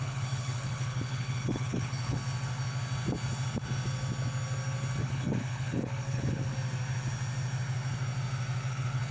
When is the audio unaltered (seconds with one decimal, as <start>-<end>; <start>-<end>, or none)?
2.2-5.0; 6.5-8.7